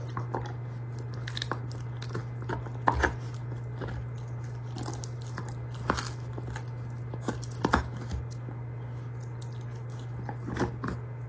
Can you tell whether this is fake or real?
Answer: real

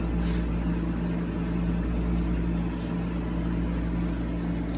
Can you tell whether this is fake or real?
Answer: real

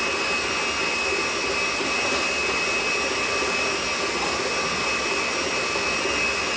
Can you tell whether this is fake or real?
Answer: real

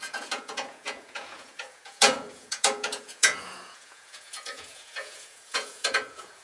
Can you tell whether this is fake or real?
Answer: fake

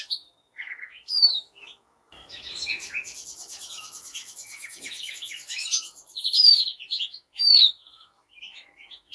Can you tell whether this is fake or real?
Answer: fake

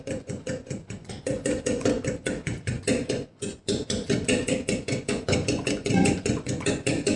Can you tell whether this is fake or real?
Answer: fake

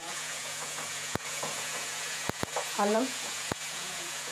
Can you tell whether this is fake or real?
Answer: fake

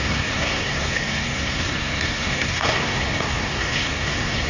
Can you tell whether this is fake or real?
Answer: fake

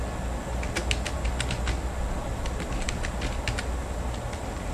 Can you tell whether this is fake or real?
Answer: real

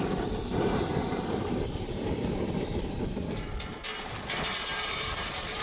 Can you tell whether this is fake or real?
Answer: fake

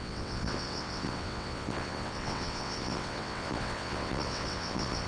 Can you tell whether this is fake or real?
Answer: fake